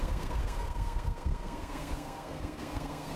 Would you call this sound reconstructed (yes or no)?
yes